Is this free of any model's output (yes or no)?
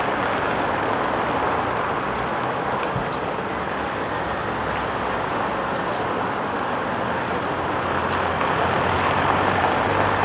yes